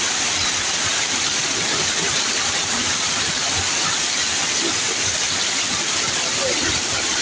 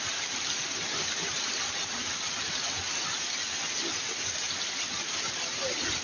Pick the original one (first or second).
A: second